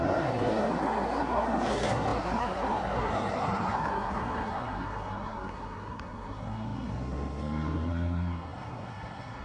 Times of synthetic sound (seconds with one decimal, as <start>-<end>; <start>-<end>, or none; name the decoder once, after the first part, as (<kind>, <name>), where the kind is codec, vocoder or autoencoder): 0.0-9.4 (codec, SNAC)